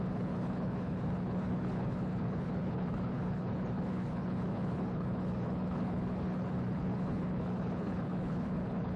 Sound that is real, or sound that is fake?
fake